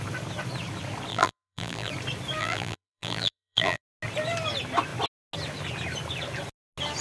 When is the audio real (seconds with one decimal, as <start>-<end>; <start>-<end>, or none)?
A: 0.0-1.1; 1.9-2.4; 3.8-7.0